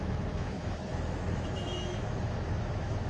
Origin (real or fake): fake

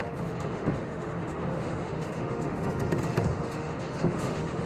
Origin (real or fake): fake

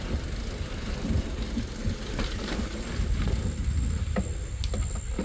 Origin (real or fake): real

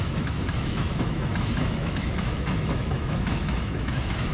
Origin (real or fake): fake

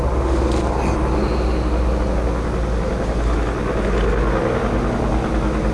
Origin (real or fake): real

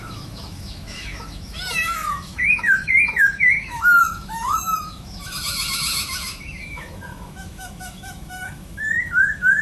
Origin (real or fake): fake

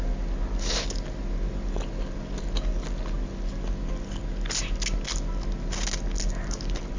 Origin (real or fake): real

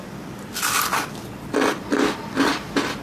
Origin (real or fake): real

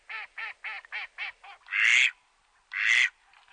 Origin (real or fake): real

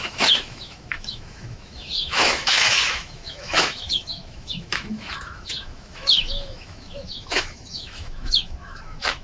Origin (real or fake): fake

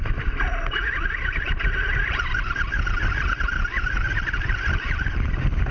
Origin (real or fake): real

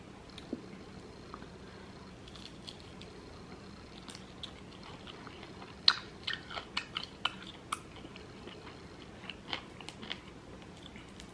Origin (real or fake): real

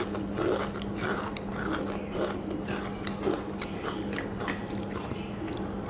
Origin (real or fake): real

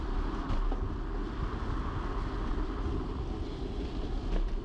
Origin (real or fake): real